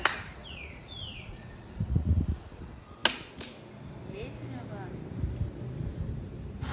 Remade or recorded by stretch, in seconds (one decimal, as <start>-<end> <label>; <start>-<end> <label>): 0.0-0.4 recorded; 0.4-2.6 remade; 2.6-6.7 recorded